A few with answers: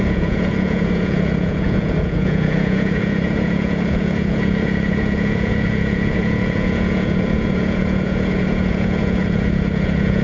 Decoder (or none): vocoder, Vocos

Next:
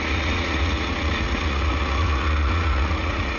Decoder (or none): vocoder, Vocos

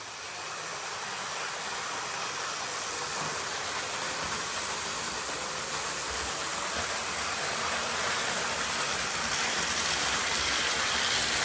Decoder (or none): none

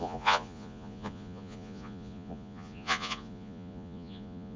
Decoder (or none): vocoder, Vocos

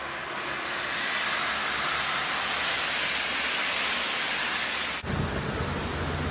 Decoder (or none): none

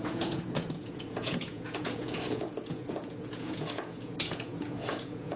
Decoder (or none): vocoder, Vocos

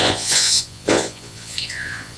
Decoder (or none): vocoder, Vocos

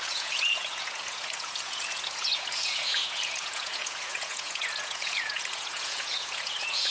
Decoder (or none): vocoder, Vocos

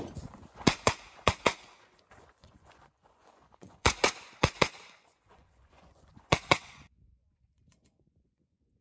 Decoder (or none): vocoder, Vocos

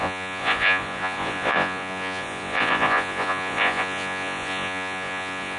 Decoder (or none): vocoder, Vocos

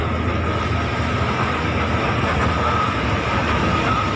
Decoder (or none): none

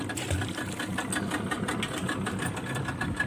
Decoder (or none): none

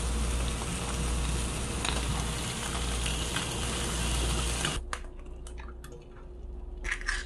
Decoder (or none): none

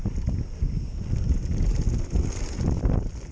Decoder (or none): none